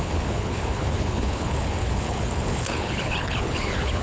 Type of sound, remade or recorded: remade